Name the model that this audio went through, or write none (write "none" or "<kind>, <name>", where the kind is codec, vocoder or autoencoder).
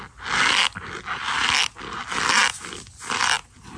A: none